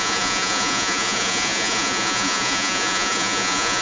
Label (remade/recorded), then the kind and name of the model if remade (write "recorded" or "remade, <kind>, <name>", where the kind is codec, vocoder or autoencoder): remade, vocoder, Vocos